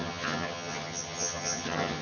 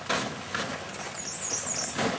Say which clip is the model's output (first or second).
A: first